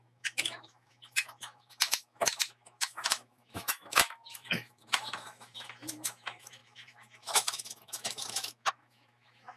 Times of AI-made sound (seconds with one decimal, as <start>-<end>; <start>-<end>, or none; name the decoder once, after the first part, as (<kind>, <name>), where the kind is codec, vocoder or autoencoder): 0.0-9.6 (autoencoder, DAC-VAE)